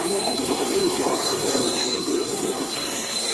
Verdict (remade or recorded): remade